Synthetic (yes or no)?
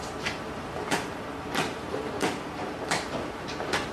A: yes